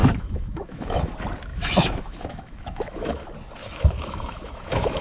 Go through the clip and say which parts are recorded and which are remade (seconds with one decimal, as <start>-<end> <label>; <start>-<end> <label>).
0.0-1.1 remade; 1.1-1.5 recorded; 1.5-3.2 remade; 3.2-3.6 recorded; 3.6-5.0 remade